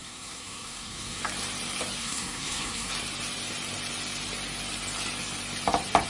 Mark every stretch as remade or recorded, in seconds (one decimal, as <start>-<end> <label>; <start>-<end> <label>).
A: 0.0-1.2 remade; 1.2-2.0 recorded; 2.0-2.9 remade; 2.9-6.1 recorded